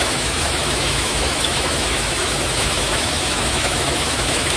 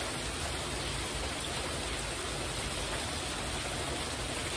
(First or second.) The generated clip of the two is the first